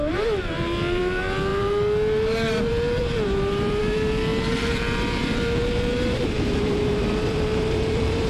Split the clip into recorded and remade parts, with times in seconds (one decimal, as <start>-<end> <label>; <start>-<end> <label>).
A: 0.0-8.3 remade